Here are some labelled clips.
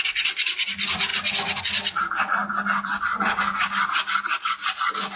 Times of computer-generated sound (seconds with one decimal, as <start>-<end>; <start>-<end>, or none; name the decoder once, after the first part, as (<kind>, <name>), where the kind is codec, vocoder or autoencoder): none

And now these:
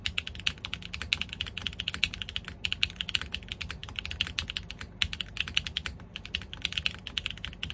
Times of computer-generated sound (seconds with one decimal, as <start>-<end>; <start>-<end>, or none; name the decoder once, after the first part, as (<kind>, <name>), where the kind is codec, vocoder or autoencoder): none

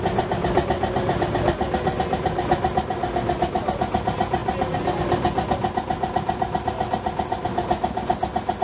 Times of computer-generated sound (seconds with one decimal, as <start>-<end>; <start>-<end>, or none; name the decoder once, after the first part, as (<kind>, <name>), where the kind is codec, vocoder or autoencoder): none

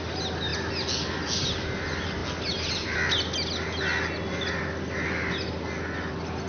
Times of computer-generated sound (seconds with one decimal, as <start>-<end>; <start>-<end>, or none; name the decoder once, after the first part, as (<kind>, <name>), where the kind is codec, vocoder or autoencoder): none

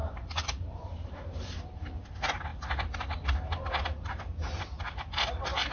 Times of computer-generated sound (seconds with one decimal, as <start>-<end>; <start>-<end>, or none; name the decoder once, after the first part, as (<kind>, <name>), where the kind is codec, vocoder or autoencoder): 0.0-2.1 (vocoder, BigVGAN v2)

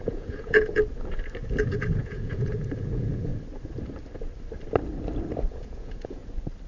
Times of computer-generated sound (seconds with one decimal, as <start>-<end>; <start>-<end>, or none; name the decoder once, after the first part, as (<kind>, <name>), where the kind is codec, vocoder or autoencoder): 0.0-0.8 (vocoder, Vocos); 1.6-3.3; 5.5-6.2